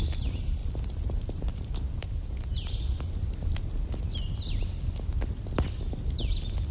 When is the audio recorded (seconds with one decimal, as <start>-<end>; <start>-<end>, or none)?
0.0-0.6; 3.1-6.7